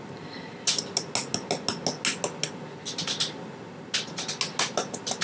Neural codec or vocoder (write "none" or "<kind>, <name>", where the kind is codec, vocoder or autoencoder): none